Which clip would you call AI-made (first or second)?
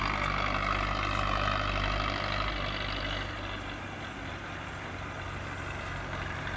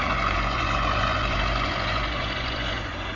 second